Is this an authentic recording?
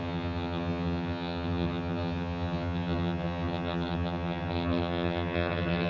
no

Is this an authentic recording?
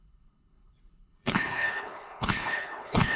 no